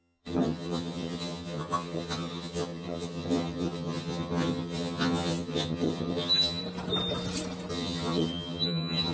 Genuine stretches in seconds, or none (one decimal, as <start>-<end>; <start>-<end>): 6.6-7.7